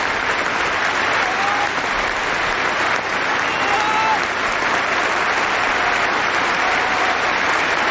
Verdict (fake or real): real